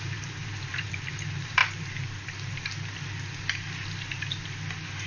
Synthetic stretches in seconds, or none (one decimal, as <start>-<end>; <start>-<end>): 0.0-1.6